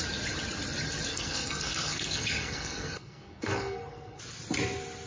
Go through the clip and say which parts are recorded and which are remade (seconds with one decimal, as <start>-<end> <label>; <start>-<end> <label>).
0.0-1.1 recorded; 1.1-4.2 remade; 4.2-5.1 recorded